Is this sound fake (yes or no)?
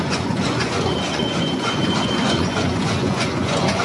yes